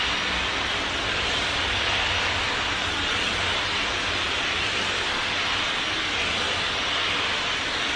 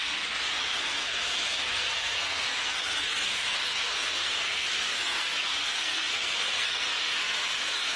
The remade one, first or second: second